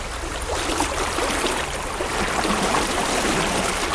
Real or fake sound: real